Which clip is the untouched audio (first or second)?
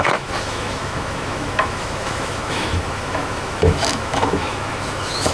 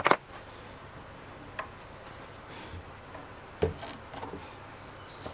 second